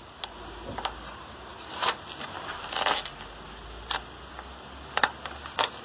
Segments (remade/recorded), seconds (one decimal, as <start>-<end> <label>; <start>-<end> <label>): 0.0-5.8 recorded